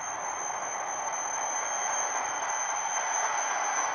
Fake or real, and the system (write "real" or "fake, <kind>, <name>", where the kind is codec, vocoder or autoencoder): real